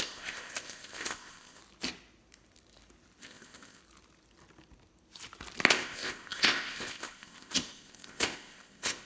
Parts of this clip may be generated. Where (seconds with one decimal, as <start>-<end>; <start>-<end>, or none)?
0.0-1.6; 3.2-3.8; 5.7-9.1